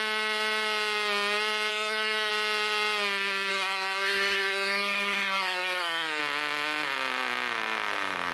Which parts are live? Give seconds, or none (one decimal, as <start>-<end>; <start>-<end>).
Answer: 0.0-1.7; 2.3-3.5; 6.2-8.3